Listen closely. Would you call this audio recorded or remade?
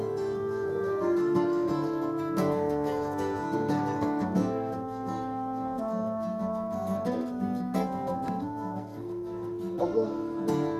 remade